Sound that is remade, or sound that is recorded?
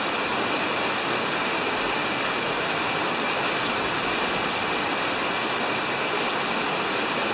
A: recorded